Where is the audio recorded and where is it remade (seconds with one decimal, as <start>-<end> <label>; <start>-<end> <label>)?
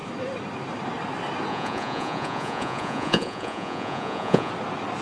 0.0-1.5 recorded; 1.5-4.5 remade; 4.5-5.0 recorded